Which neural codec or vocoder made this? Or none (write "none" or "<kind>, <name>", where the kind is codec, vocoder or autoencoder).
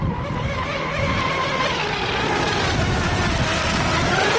none